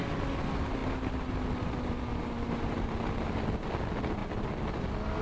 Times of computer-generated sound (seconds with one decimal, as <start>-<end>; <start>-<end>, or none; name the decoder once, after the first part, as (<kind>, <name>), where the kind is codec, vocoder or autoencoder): none